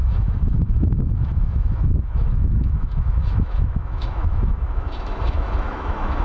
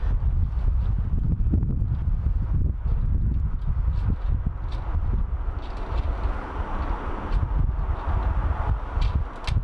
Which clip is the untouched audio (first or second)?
second